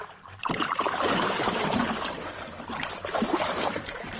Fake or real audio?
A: fake